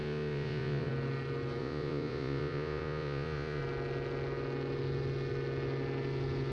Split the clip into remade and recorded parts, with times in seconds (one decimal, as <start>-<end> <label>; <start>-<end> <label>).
0.0-0.9 remade; 0.9-1.6 recorded; 1.6-3.6 remade; 3.6-6.5 recorded